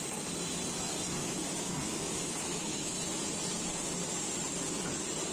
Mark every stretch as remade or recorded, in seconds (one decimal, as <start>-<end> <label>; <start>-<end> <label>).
0.0-1.2 recorded; 1.2-3.2 remade; 3.2-5.3 recorded